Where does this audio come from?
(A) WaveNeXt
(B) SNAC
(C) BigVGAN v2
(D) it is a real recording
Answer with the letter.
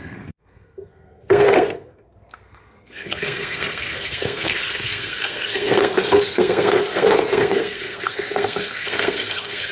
B